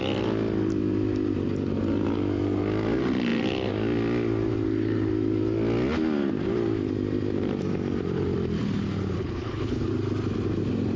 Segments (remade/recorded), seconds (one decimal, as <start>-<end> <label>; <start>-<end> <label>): 0.0-9.2 recorded; 9.2-9.9 remade; 9.9-11.0 recorded